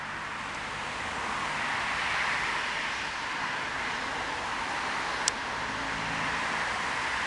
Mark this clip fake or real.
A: real